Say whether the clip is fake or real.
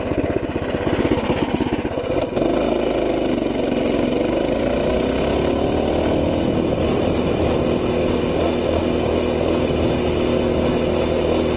real